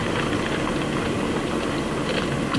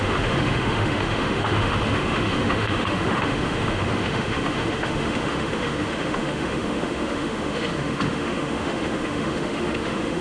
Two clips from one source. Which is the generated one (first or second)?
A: second